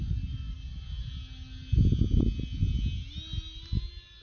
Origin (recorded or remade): recorded